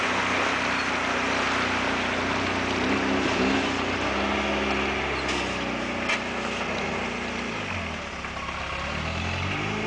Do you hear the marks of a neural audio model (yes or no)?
no